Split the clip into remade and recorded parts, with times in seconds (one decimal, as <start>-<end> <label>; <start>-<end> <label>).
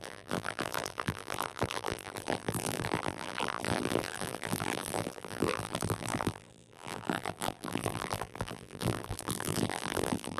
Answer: 0.0-10.4 remade